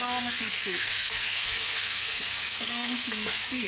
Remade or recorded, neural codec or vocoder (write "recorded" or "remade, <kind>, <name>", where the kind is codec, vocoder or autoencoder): remade, codec, SNAC